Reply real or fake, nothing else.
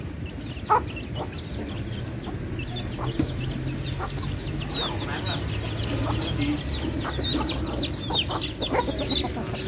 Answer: real